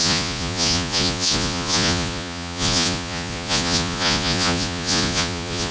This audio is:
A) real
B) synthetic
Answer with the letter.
B